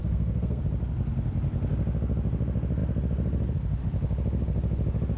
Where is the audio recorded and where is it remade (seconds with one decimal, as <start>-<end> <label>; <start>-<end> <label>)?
0.0-0.6 remade; 0.6-5.2 recorded